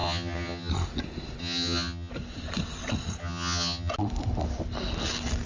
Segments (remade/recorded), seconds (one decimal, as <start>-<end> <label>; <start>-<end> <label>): 0.0-0.7 remade; 0.7-1.4 recorded; 1.4-2.1 remade; 2.1-3.2 recorded; 3.2-3.9 remade; 3.9-5.5 recorded